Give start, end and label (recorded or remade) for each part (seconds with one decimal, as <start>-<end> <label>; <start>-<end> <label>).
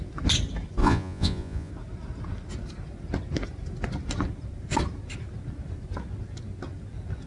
0.0-0.8 recorded; 0.8-1.7 remade; 1.7-7.3 recorded